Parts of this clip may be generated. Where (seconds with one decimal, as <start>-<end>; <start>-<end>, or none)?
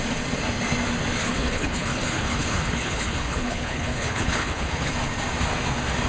1.2-4.9